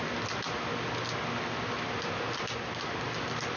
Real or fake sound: real